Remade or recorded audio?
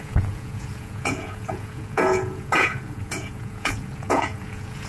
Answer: remade